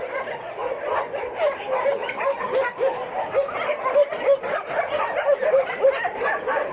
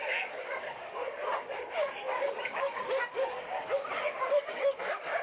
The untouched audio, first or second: first